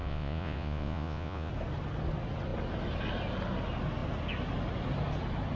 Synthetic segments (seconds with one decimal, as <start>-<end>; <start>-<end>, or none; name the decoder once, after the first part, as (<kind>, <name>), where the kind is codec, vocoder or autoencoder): 0.0-1.5 (vocoder, Vocos)